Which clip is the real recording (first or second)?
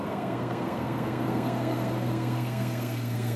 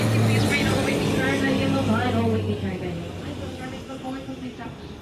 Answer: second